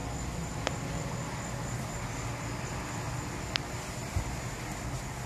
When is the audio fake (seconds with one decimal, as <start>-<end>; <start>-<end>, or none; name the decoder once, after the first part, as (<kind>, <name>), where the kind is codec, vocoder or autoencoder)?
0.0-1.1 (vocoder, BigVGAN v2)